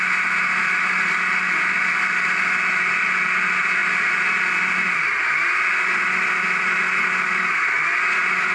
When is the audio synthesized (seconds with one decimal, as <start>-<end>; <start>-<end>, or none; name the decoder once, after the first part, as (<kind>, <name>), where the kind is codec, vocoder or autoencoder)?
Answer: none